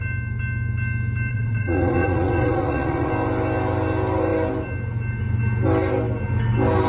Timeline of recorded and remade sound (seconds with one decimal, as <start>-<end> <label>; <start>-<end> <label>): 0.0-1.3 recorded; 1.3-3.1 remade; 3.1-6.9 recorded